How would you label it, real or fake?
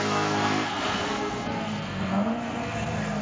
fake